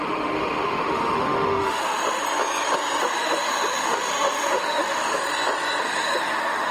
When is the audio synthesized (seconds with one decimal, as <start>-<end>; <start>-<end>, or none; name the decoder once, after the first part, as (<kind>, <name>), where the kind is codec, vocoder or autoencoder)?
0.0-2.2 (autoencoder, DAC-VAE); 3.0-5.2; 5.8-6.7